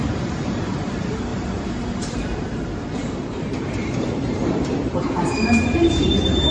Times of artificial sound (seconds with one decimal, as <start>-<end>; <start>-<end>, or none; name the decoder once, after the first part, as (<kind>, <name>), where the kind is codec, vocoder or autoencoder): 0.0-6.5 (vocoder, BigVGAN v2)